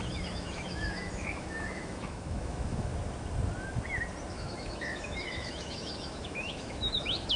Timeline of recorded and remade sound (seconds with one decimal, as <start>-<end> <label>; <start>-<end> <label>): 0.0-2.9 remade; 2.9-4.3 recorded; 4.3-7.4 remade